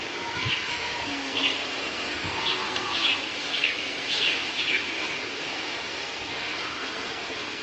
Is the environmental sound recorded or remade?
remade